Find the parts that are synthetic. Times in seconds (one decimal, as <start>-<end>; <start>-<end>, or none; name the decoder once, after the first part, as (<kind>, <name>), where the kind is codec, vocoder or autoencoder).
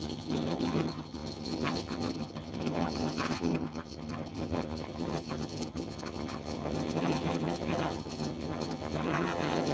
0.0-9.7 (vocoder, HiFi-GAN)